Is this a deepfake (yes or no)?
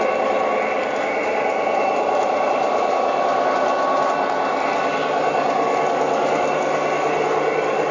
no